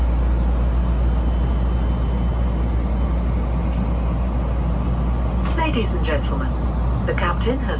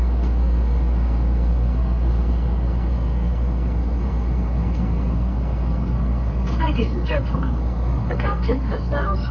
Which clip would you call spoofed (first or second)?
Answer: second